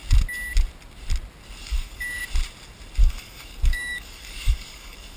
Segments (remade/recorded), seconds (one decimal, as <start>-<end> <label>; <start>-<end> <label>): 0.0-1.6 recorded; 1.6-2.2 remade; 2.2-3.0 recorded; 3.0-5.2 remade